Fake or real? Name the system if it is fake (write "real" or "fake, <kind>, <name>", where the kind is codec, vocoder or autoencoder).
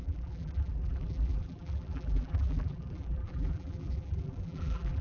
fake, vocoder, BigVGAN v2